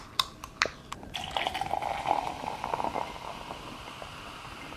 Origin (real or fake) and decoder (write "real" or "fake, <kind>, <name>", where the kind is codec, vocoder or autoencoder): real